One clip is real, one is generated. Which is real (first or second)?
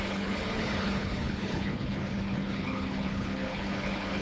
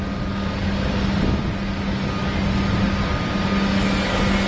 second